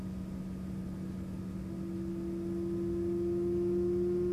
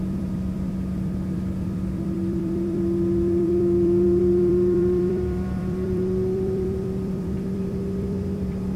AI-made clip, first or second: second